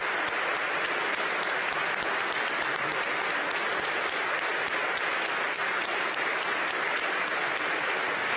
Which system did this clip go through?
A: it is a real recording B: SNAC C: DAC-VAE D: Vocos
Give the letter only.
A